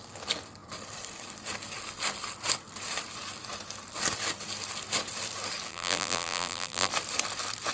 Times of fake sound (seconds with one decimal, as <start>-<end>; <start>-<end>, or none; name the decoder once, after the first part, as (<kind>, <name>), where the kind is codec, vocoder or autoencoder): 5.7-6.9 (vocoder, BigVGAN v2)